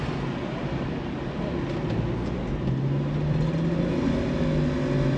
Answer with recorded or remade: recorded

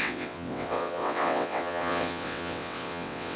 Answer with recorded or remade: remade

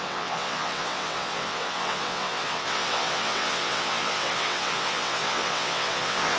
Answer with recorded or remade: remade